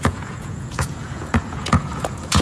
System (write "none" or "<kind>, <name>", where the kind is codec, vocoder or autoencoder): vocoder, Vocos